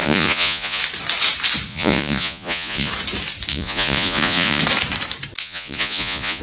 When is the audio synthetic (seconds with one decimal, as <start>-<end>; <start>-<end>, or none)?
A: 0.0-0.8; 1.7-2.9; 3.5-4.6; 5.4-6.4